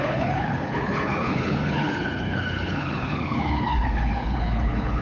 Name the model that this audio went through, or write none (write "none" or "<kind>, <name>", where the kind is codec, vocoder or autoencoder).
codec, HILCodec